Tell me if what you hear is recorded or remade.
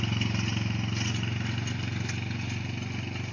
recorded